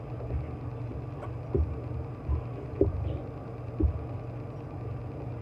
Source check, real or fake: real